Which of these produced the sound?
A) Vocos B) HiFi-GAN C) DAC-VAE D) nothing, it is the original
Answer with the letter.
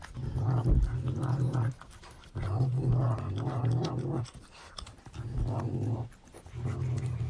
D